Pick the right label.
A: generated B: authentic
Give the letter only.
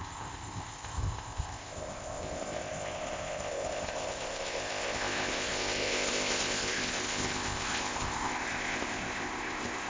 A